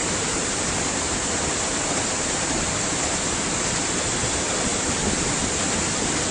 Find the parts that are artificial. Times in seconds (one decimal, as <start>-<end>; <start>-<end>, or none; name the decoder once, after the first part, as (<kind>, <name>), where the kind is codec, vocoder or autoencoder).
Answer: 0.0-3.0 (vocoder, BigVGAN v2)